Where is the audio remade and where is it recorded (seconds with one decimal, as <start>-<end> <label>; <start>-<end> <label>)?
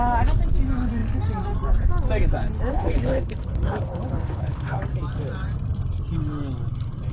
0.0-2.7 recorded; 2.7-4.8 remade; 4.8-7.1 recorded